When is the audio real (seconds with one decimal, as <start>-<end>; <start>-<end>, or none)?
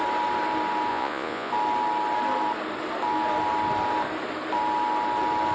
0.0-0.9; 1.5-5.5